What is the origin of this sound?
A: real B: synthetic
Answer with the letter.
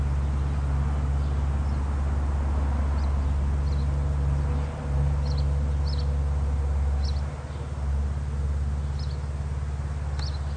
A